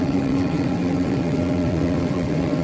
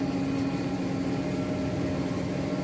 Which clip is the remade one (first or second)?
first